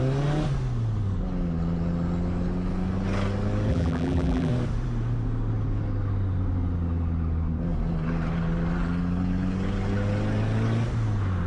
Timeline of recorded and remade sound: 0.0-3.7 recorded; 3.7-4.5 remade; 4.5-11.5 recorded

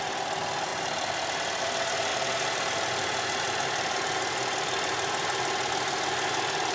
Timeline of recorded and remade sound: 0.0-6.7 recorded

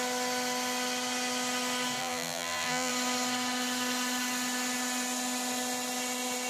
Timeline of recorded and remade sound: 0.0-2.0 recorded; 2.0-2.9 remade; 2.9-6.5 recorded